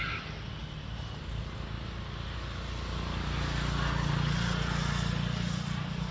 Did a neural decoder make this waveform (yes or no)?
no